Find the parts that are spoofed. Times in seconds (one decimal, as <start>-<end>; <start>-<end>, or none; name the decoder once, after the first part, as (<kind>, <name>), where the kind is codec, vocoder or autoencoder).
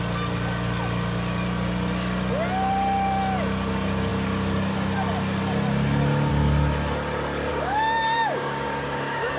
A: 7.5-9.4 (codec, DAC)